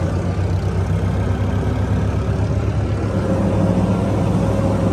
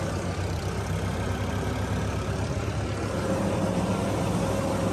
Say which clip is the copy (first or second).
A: second